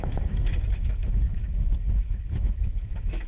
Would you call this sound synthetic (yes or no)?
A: yes